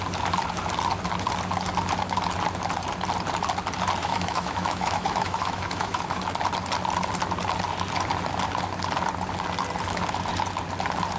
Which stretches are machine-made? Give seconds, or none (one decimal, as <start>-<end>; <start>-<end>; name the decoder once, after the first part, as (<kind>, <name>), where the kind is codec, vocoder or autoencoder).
4.0-6.2 (autoencoder, DAC-VAE)